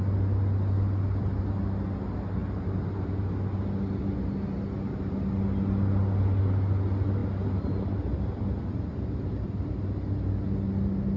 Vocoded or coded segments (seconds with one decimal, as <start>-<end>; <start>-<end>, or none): none